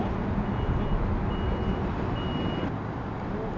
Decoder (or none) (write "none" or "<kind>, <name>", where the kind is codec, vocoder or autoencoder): none